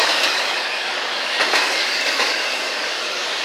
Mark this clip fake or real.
fake